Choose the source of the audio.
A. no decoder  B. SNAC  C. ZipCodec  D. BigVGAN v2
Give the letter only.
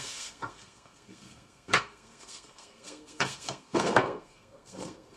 B